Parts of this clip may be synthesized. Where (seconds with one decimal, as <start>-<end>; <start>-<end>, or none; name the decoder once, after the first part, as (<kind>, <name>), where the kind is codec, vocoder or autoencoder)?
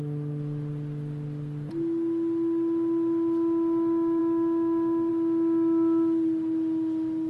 none